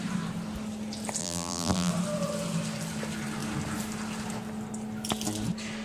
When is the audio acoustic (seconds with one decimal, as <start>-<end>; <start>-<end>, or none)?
0.0-1.2; 1.9-5.8

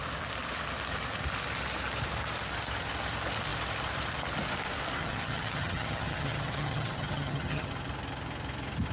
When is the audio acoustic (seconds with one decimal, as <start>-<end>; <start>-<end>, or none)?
0.0-5.0; 7.7-8.9

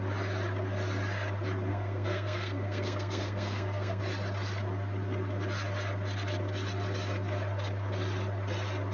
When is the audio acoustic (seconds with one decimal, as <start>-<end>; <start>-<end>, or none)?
0.0-1.7; 4.0-8.9

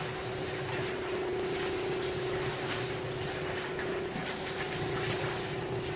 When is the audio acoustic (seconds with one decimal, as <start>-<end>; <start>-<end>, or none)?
0.0-6.0

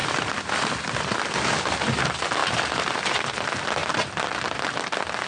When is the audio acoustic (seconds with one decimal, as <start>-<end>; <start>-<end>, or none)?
0.6-2.4; 3.2-3.8

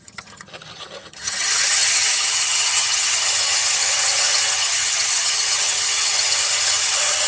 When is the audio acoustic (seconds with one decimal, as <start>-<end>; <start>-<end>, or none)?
none

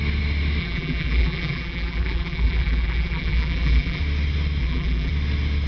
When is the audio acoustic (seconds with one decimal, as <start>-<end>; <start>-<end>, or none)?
0.0-0.6; 4.0-4.6; 5.1-5.7

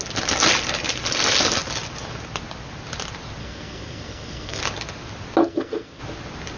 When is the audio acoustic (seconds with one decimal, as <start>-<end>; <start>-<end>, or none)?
0.0-3.4; 4.6-5.4; 6.0-6.6